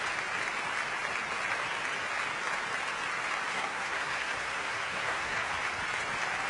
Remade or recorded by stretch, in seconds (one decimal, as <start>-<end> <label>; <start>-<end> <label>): 0.0-3.5 recorded; 3.5-5.5 remade; 5.5-6.5 recorded